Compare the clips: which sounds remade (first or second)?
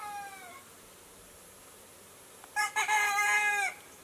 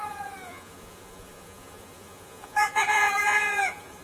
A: second